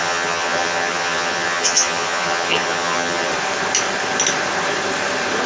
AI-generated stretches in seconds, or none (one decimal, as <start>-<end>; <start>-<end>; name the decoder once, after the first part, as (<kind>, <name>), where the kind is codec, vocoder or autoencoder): 0.0-3.3 (vocoder, HiFi-GAN)